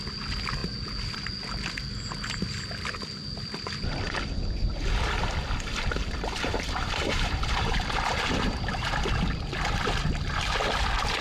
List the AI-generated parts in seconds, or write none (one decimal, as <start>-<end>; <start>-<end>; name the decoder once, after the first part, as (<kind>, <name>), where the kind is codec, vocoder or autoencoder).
6.0-8.9 (vocoder, BigVGAN v2)